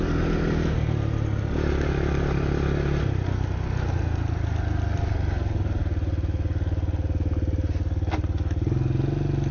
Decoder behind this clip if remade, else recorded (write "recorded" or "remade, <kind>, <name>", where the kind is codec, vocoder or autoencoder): recorded